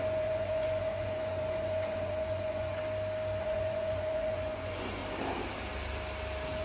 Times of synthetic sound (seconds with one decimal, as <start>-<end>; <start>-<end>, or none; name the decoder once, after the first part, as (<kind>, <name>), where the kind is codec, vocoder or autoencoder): 0.0-2.8 (vocoder, Vocos); 3.4-5.0